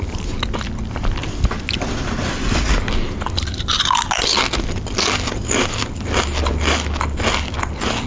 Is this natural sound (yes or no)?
yes